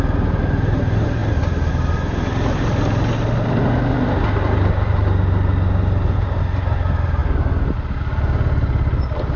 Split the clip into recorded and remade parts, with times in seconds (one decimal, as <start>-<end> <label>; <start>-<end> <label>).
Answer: 0.0-9.4 recorded